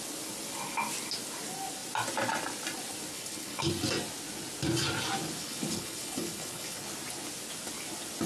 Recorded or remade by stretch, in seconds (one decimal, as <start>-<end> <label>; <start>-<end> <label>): 0.0-3.1 recorded; 3.1-3.7 remade; 3.7-5.4 recorded; 5.4-6.9 remade; 6.9-8.3 recorded